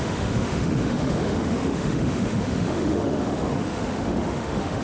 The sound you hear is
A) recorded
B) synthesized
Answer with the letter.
B